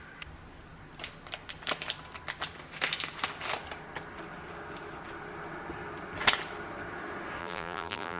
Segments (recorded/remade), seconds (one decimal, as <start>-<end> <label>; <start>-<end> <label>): 0.0-7.4 recorded; 7.4-8.2 remade